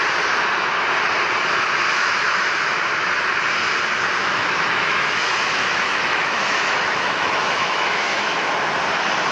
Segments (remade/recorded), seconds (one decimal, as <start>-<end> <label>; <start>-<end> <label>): 0.0-1.9 recorded; 1.9-2.8 remade; 2.8-4.2 recorded; 4.2-8.5 remade; 8.5-9.3 recorded